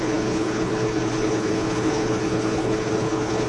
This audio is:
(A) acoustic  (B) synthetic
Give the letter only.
B